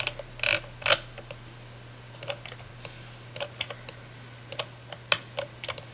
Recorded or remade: recorded